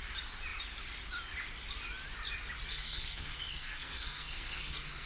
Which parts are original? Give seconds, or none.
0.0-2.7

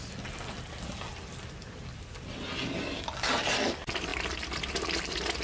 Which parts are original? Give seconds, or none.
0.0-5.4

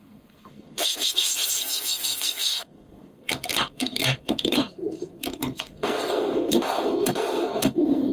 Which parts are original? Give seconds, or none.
none

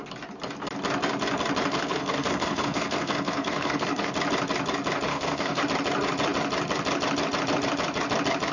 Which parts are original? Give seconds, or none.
0.0-1.7; 4.1-5.1; 5.6-8.5